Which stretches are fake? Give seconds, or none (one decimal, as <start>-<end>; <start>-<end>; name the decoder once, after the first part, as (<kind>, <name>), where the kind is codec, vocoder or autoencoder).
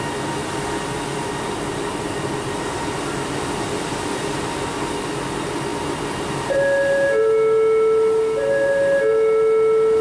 0.4-2.5 (vocoder, BigVGAN v2)